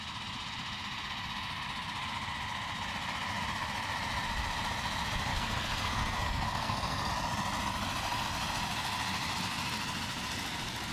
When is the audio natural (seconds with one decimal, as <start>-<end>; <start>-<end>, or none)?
0.0-5.3; 7.1-10.9